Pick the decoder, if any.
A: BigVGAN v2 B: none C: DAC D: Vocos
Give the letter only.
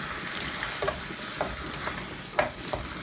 B